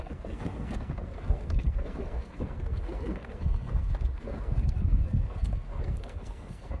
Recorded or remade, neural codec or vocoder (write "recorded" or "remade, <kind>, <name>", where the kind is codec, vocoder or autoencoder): remade, codec, SNAC